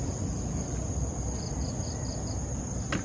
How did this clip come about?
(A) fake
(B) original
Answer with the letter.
B